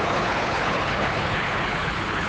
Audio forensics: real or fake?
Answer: fake